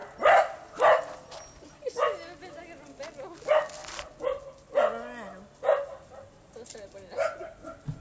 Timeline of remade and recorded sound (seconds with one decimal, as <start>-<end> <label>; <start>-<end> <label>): 0.0-8.0 recorded